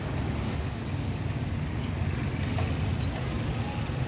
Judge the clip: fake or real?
real